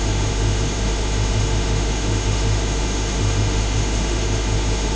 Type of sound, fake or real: fake